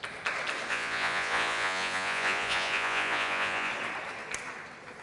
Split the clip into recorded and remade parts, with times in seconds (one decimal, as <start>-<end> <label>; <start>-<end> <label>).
0.0-0.7 recorded; 0.7-3.7 remade; 3.7-5.0 recorded